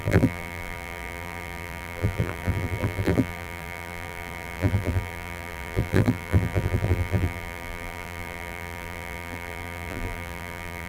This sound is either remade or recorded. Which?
remade